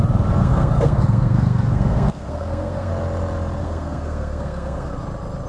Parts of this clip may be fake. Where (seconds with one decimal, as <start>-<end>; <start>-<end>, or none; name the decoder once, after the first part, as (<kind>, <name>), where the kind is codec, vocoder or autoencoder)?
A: 0.4-2.9 (codec, SNAC); 3.6-4.9